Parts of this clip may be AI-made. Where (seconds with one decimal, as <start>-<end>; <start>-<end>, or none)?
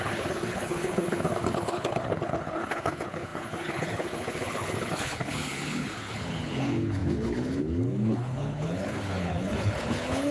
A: 0.0-10.3